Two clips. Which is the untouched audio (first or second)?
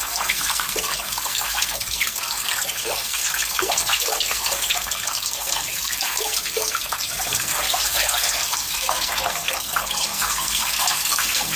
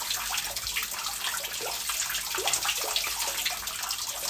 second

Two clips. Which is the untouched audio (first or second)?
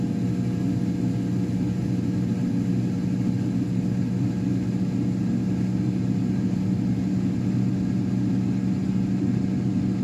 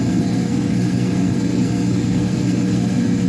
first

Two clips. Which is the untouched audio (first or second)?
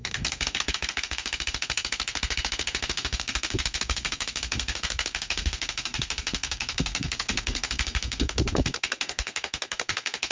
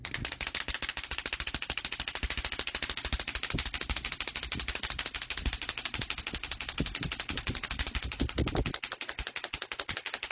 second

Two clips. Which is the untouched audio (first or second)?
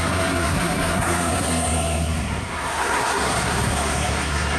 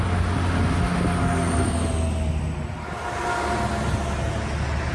second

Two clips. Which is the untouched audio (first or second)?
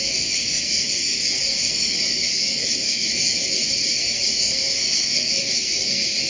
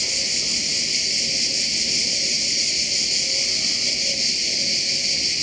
second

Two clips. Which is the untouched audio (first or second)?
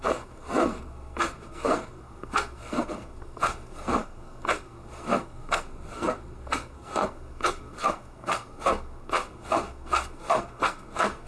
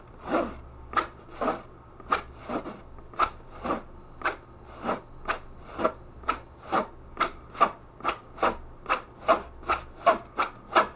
second